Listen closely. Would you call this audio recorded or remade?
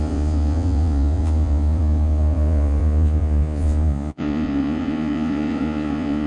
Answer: remade